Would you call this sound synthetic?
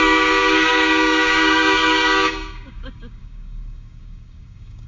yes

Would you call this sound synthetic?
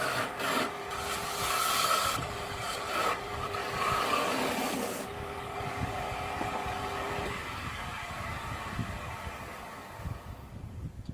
yes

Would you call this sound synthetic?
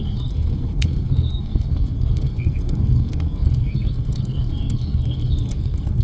yes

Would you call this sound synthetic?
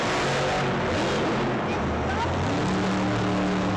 no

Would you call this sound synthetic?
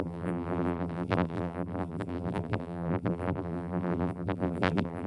yes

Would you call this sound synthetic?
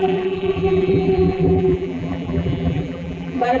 yes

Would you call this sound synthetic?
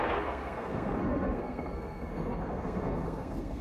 yes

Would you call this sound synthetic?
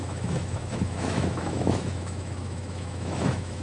yes